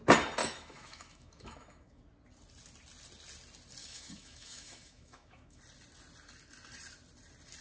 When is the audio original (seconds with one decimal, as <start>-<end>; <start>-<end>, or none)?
0.0-0.4; 2.0-3.8; 5.6-7.6